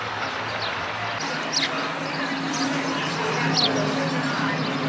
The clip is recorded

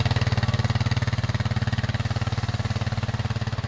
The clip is recorded